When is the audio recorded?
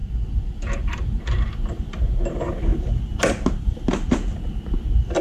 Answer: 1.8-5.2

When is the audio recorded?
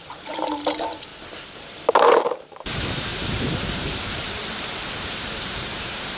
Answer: 1.1-1.9; 4.4-5.2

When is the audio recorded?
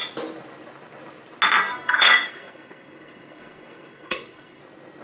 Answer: 0.0-1.6; 4.6-5.0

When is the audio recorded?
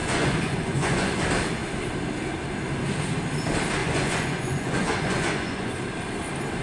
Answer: 1.2-3.8; 5.7-6.6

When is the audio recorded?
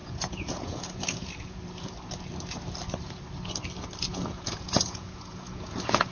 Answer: 1.6-4.1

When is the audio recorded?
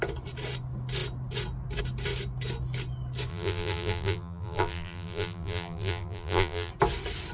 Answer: 0.0-3.3; 6.7-7.3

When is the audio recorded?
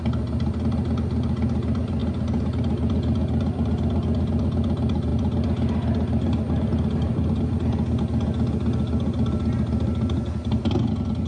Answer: 0.0-11.3